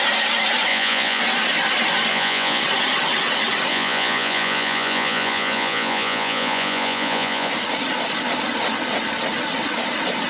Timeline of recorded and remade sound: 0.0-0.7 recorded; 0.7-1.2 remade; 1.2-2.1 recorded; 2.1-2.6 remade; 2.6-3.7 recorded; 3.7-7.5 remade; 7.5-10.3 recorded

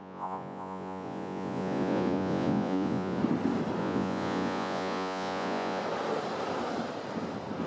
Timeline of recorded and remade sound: 0.0-3.2 remade; 3.2-3.8 recorded; 3.8-5.8 remade; 5.8-7.7 recorded

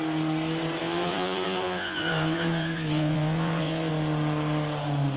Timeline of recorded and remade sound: 0.0-0.8 recorded; 0.8-3.9 remade; 3.9-5.2 recorded